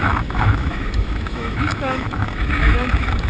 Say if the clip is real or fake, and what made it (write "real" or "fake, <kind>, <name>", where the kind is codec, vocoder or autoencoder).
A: fake, autoencoder, DAC-VAE